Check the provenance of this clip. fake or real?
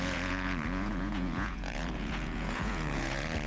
fake